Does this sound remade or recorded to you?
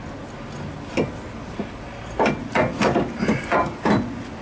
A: recorded